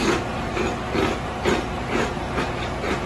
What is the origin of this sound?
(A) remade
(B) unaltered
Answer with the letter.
A